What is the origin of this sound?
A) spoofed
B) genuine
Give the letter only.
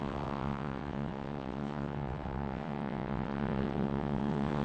A